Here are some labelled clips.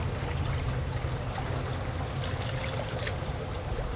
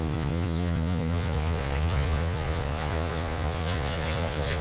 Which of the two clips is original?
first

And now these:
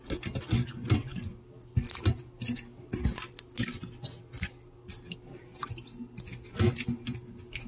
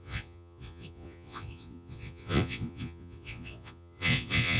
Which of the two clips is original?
first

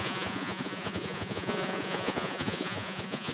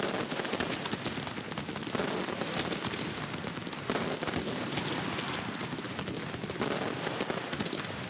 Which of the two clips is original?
second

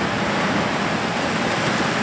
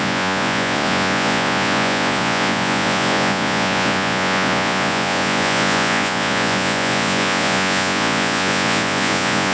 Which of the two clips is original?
first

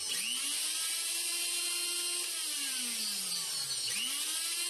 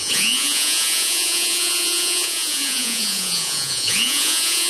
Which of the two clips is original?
first